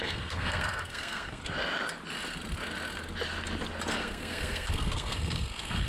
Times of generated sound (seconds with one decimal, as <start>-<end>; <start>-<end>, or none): 0.0-1.4; 3.9-5.9

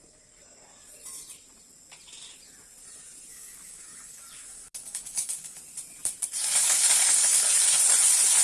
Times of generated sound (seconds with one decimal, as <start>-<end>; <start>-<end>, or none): 3.3-5.6; 6.4-7.5